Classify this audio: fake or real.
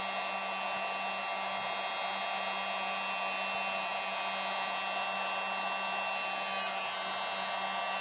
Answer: real